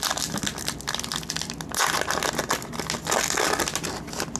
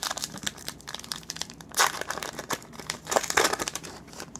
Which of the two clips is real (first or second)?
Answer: first